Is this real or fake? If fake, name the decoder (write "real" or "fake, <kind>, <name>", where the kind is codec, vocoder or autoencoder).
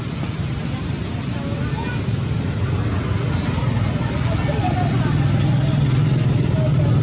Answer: real